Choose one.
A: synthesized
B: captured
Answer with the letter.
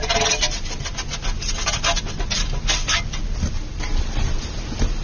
B